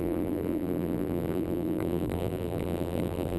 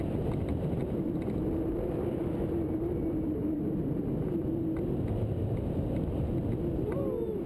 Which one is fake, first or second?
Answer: first